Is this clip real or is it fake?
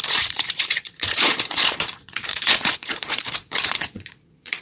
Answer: fake